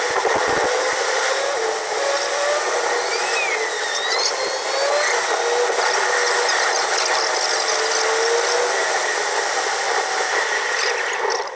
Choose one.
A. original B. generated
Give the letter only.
A